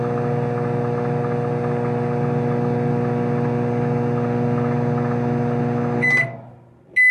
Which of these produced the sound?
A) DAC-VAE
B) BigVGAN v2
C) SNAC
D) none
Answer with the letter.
D